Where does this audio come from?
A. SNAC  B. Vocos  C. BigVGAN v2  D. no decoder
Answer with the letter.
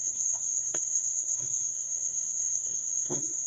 A